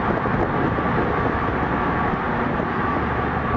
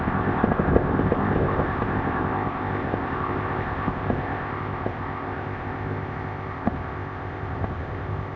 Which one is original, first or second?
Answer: first